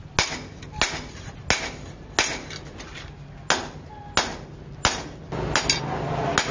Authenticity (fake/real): real